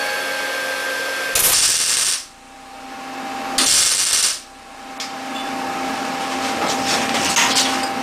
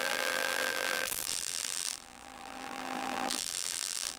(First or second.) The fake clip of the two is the second